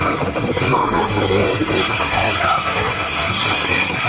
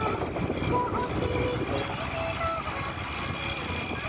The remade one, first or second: first